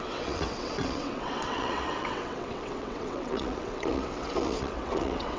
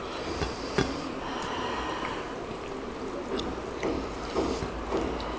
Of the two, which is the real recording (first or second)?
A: second